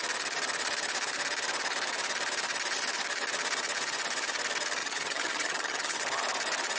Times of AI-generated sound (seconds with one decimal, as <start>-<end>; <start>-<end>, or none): 4.8-6.0